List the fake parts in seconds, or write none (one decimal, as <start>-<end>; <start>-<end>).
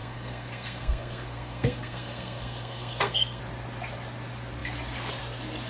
0.0-3.4